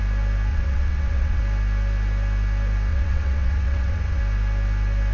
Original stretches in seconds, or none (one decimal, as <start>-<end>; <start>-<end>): 0.0-0.5; 1.4-2.9; 4.2-5.1